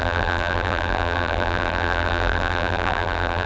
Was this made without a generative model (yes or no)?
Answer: no